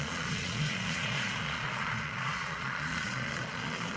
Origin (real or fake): fake